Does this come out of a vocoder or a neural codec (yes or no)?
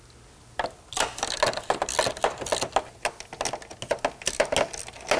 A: no